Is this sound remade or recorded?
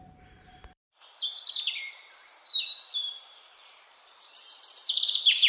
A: remade